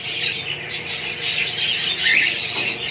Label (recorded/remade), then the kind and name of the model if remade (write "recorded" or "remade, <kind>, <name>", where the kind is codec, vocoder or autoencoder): remade, vocoder, Vocos